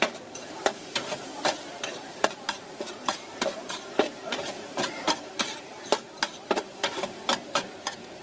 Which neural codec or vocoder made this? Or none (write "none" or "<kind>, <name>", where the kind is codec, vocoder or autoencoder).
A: vocoder, BigVGAN v2